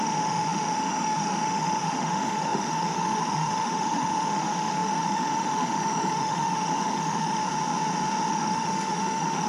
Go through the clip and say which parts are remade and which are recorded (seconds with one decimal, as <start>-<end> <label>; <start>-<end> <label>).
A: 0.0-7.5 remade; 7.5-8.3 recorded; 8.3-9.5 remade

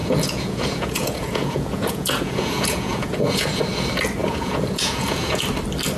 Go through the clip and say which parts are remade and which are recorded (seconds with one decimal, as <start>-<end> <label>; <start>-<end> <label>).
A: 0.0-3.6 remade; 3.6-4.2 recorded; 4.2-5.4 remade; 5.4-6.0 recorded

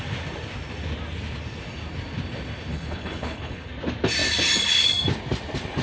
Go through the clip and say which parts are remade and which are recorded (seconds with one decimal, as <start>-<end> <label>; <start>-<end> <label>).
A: 0.0-2.7 recorded; 2.7-3.7 remade; 3.7-5.8 recorded

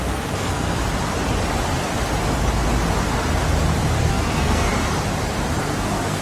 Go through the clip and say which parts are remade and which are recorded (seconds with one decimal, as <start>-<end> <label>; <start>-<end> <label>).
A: 0.0-0.8 remade; 0.8-4.0 recorded; 4.0-4.7 remade; 4.7-5.6 recorded; 5.6-6.2 remade